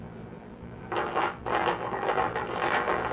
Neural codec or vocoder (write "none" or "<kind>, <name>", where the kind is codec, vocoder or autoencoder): vocoder, BigVGAN v2